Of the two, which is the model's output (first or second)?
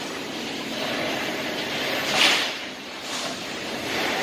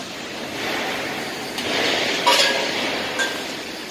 first